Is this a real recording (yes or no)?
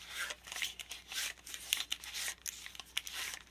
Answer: yes